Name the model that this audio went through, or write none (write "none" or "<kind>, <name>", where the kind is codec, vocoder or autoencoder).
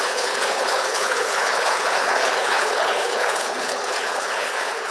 codec, HILCodec